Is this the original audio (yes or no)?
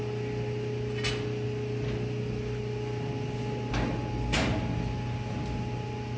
yes